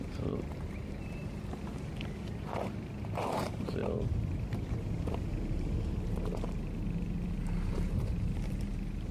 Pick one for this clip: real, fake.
fake